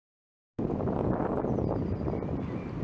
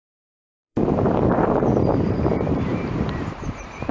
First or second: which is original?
first